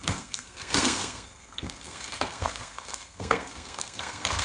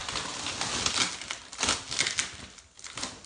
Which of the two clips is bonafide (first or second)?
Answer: second